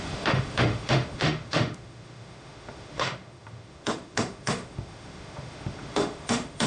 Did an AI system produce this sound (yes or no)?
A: yes